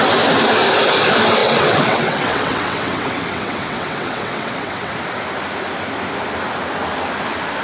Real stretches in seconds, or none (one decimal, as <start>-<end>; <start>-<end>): 0.0-1.4; 4.9-7.6